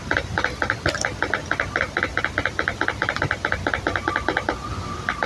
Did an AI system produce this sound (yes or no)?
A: no